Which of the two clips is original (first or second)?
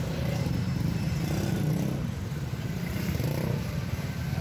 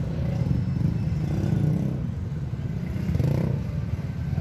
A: second